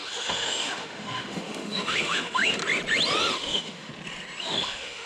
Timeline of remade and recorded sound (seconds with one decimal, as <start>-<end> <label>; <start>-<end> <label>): 0.0-2.6 remade; 2.6-3.3 recorded; 3.3-3.9 remade; 3.9-4.4 recorded; 4.4-5.1 remade